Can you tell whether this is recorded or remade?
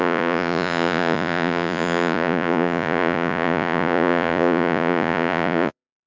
remade